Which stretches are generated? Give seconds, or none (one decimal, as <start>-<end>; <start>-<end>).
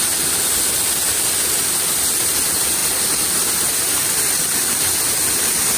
none